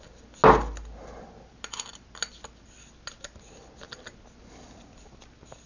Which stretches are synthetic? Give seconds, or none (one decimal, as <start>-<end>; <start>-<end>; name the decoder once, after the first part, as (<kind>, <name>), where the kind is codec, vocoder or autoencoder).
none